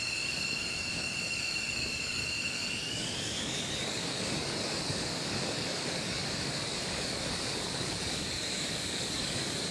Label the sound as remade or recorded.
remade